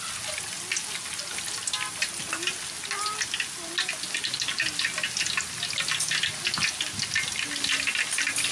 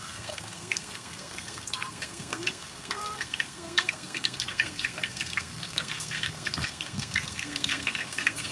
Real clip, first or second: first